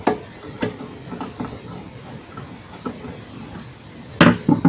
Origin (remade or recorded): recorded